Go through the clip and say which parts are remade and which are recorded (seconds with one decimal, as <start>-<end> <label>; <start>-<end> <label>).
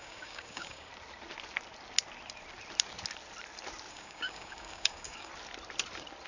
0.0-0.9 remade; 0.9-3.9 recorded; 3.9-5.3 remade; 5.3-6.3 recorded